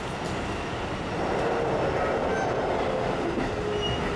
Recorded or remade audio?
recorded